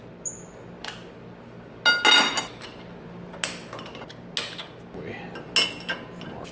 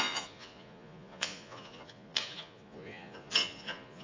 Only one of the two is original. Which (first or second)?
first